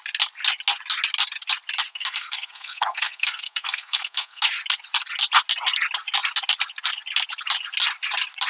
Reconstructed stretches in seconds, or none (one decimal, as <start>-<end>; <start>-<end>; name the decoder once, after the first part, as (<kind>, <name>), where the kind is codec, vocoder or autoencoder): 1.9-4.4 (codec, SNAC)